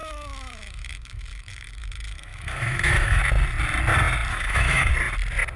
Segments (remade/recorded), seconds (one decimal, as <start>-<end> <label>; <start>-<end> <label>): 0.0-3.2 remade; 3.2-4.3 recorded; 4.3-4.9 remade; 4.9-5.6 recorded